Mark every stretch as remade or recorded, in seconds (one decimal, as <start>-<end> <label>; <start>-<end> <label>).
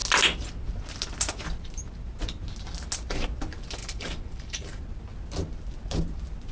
0.0-3.8 recorded; 3.8-4.8 remade; 4.8-6.5 recorded